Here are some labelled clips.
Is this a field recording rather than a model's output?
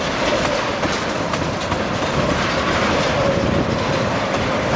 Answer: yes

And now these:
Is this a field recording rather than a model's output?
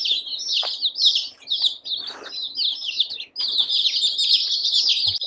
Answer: yes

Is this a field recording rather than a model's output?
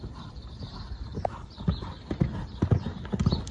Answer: yes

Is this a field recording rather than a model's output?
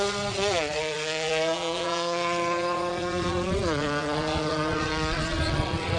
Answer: no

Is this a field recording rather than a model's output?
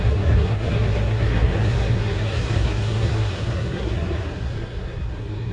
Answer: no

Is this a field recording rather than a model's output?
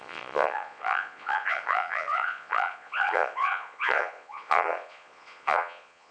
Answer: no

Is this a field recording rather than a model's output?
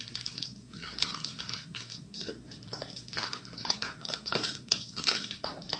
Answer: no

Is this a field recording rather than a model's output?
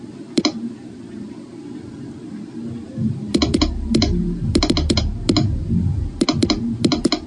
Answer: yes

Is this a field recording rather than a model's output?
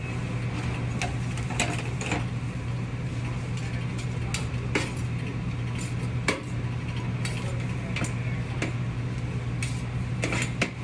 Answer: yes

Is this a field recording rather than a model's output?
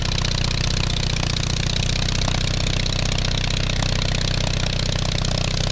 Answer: yes